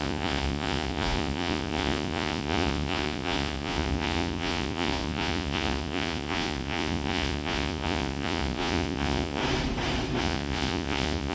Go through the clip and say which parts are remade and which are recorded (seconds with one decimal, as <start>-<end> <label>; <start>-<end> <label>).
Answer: 0.0-9.4 remade; 9.4-10.2 recorded; 10.2-11.3 remade